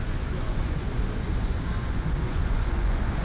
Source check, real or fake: fake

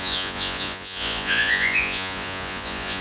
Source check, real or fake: fake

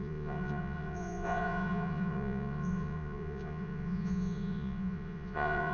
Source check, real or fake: fake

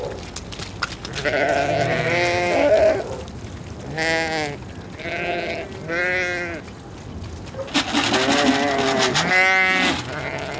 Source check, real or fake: real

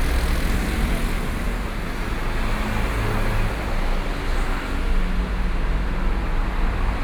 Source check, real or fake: real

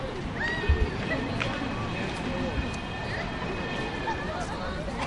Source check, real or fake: real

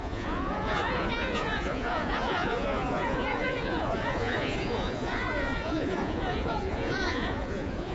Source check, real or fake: fake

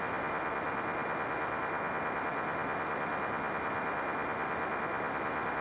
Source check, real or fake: real